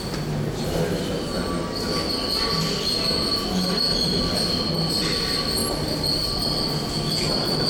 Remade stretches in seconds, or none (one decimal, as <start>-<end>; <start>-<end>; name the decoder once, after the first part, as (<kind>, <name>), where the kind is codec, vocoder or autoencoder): none